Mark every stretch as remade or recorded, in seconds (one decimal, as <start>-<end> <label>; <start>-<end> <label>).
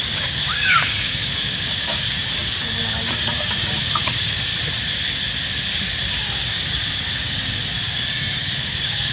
0.0-4.5 remade; 4.5-6.4 recorded; 6.4-9.1 remade